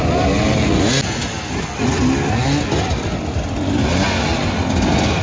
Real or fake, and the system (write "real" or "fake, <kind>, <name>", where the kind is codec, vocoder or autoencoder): real